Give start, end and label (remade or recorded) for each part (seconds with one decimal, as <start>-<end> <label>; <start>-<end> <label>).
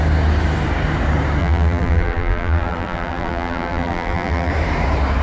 0.0-1.4 recorded; 1.4-4.5 remade; 4.5-5.2 recorded